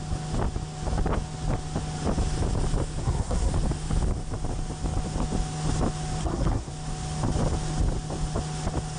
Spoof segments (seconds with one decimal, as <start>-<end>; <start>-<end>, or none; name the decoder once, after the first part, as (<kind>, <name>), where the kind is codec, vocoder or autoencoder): 3.0-3.5 (codec, SNAC); 6.2-6.7